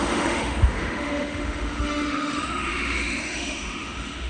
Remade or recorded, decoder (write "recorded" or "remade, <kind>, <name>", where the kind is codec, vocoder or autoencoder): remade, autoencoder, DAC-VAE